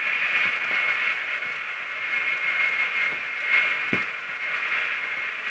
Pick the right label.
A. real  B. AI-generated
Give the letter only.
B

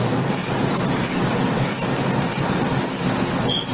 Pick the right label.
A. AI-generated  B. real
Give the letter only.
B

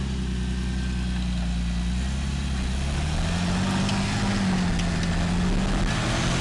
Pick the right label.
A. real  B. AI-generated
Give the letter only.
A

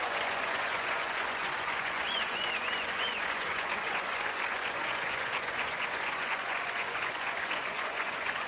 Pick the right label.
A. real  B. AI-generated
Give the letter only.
B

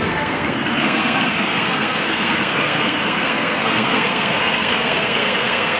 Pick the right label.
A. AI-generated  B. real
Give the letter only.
A